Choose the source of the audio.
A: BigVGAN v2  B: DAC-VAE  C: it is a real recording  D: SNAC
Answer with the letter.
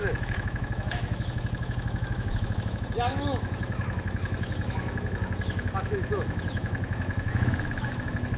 B